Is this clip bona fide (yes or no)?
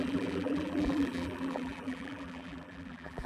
no